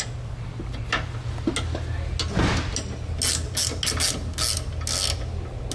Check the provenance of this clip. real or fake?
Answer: real